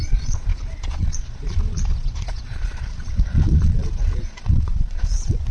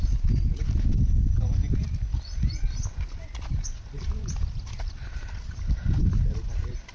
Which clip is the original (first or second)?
second